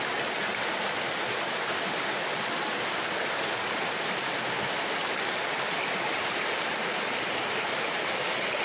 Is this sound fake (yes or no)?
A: no